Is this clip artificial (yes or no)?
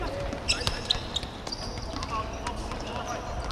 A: no